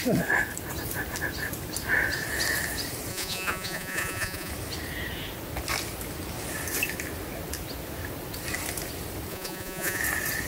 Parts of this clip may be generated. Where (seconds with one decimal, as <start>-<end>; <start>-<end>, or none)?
3.1-4.5; 9.3-10.0